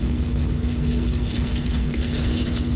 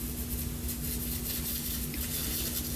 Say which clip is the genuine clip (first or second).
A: second